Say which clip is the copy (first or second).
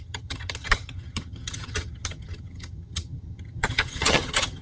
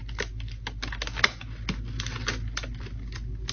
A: first